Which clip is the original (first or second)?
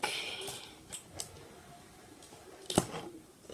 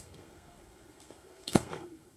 first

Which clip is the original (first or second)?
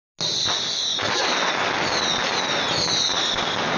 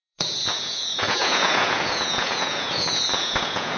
first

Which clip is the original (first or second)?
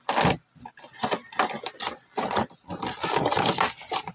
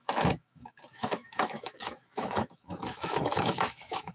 first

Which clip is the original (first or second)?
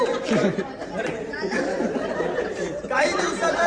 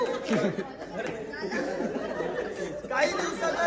second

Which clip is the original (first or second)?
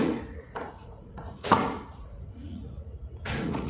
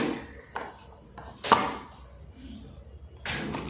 second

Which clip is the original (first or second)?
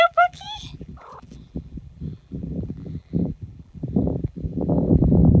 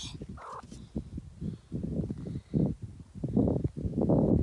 second